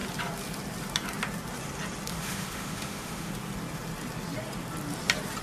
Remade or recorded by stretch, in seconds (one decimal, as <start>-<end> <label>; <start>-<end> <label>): 0.0-2.1 recorded; 2.1-3.3 remade; 3.3-5.4 recorded